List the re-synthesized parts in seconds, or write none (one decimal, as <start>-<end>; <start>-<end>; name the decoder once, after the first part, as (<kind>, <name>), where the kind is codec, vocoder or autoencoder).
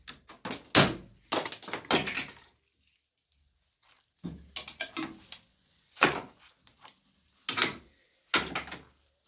5.5-6.5 (vocoder, Vocos)